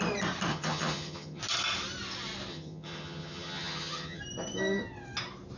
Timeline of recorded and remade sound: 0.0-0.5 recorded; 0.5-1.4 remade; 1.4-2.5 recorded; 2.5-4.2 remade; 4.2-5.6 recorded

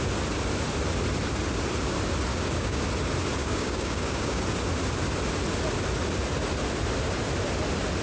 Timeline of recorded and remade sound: 0.0-2.3 recorded; 2.3-2.8 remade; 2.8-3.4 recorded; 3.4-4.4 remade; 4.4-8.0 recorded

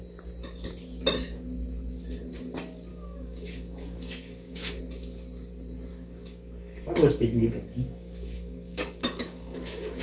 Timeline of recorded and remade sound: 0.0-2.9 recorded; 2.9-4.8 remade; 4.8-5.9 recorded; 5.9-10.0 remade

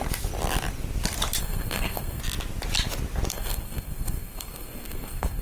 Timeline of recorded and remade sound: 0.0-1.4 recorded; 1.4-2.2 remade; 2.2-3.3 recorded; 3.3-5.4 remade

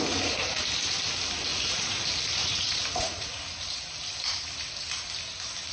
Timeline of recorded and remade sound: 0.0-1.5 recorded; 1.5-2.0 remade; 2.0-2.4 recorded; 2.4-3.4 remade; 3.4-5.7 recorded

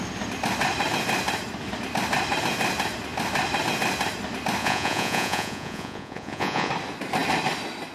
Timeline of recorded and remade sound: 0.0-4.6 recorded; 4.6-6.7 remade; 6.7-7.9 recorded

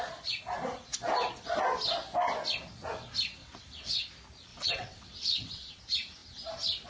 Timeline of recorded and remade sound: 0.0-3.4 recorded; 3.4-4.1 remade; 4.1-4.5 recorded; 4.5-5.8 remade; 5.8-6.9 recorded